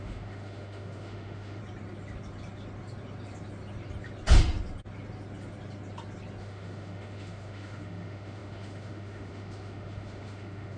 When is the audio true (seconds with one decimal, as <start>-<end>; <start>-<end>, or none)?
1.6-6.4